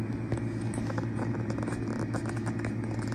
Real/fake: real